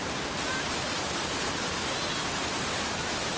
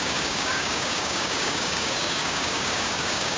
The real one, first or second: first